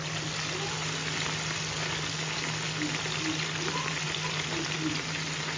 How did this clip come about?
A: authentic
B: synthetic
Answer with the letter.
A